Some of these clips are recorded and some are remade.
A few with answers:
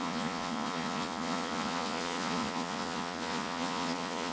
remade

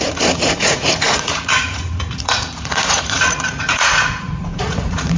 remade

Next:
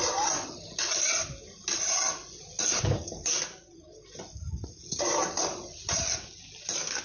recorded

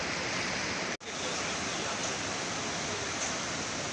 recorded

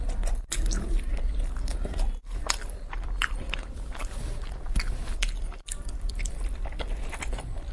remade